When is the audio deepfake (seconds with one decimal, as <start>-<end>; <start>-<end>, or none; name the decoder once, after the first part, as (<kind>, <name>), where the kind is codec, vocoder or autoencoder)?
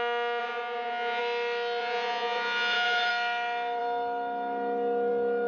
0.4-1.2 (vocoder, Vocos); 1.8-3.1